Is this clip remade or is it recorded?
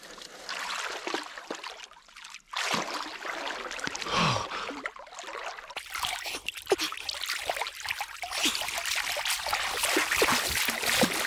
recorded